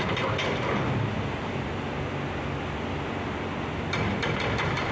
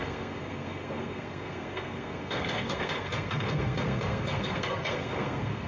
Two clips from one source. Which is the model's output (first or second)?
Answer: second